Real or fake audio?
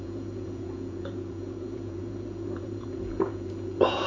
fake